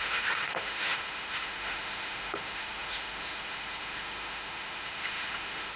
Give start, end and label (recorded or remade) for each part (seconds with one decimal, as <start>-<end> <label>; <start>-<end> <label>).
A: 0.0-5.8 remade